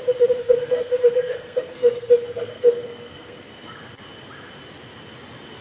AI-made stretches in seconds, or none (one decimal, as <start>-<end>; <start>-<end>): 0.4-3.8

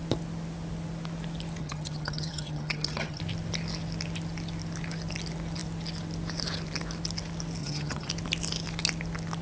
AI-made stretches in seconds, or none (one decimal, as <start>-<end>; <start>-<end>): 1.6-3.2; 7.6-8.1

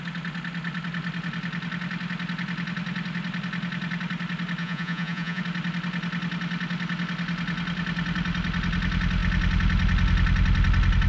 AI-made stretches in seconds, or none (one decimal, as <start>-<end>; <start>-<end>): 4.6-5.4

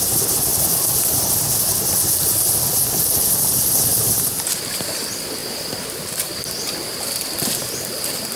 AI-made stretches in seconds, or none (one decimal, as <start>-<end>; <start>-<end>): 0.0-3.9; 4.7-5.4; 6.5-8.4